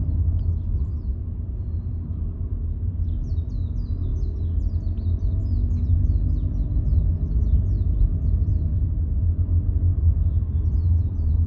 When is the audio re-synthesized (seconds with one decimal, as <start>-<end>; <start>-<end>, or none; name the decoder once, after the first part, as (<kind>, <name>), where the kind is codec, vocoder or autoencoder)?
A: none